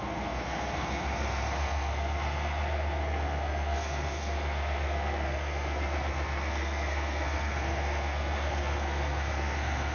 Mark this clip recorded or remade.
remade